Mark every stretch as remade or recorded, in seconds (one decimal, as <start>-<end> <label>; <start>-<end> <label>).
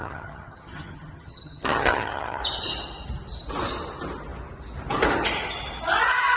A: 0.0-2.4 remade; 2.4-6.4 recorded